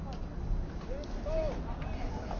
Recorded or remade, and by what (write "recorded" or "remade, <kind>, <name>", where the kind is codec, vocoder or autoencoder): recorded